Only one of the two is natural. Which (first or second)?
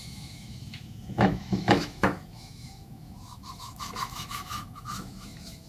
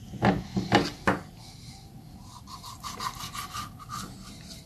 second